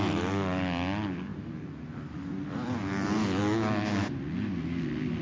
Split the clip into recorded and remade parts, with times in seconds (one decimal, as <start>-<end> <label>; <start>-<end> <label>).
0.0-5.2 recorded